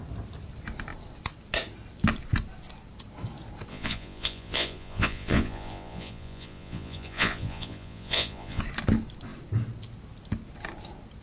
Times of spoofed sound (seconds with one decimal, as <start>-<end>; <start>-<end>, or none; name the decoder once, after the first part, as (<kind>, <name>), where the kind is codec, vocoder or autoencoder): 3.7-8.6 (vocoder, Vocos)